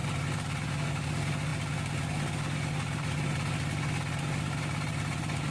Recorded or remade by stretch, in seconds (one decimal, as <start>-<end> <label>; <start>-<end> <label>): 0.0-5.5 recorded